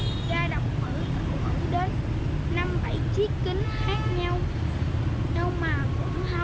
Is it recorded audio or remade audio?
recorded